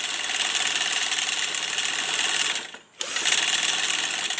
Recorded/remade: recorded